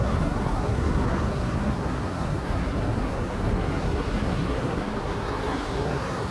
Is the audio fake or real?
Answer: fake